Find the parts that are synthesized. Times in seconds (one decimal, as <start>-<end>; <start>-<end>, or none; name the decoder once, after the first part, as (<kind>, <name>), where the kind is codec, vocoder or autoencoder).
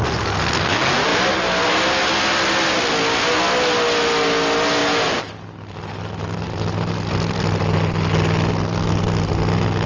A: none